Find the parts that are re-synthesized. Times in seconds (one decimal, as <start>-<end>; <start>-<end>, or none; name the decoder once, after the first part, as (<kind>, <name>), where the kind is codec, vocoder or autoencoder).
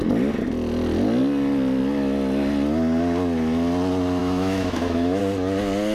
4.2-5.2 (autoencoder, DAC-VAE)